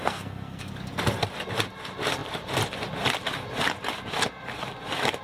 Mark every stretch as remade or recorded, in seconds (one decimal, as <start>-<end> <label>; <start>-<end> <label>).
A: 0.0-0.7 remade; 0.7-5.2 recorded